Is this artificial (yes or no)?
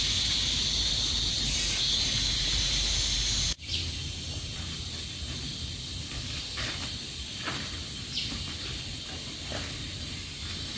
no